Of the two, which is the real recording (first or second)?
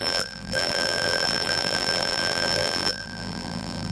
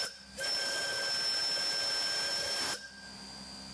second